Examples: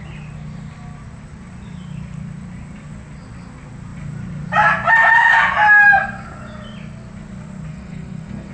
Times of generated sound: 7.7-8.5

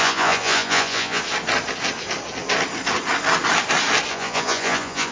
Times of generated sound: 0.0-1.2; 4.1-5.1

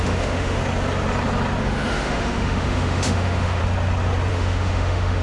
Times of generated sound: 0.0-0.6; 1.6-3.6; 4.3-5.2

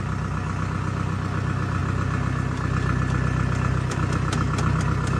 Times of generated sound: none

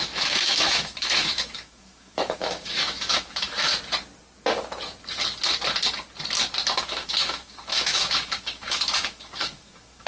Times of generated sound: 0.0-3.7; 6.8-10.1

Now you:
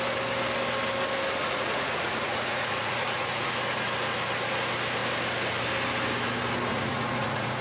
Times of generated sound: 1.4-3.5; 6.7-7.6

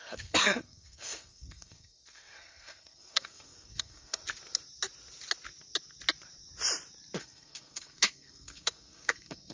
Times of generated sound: 0.0-4.2; 7.2-9.5